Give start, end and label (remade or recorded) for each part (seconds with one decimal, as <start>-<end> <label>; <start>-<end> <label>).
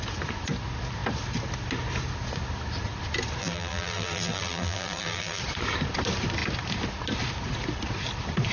0.0-3.4 recorded; 3.4-5.4 remade; 5.4-8.5 recorded